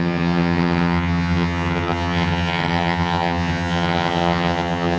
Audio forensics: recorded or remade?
remade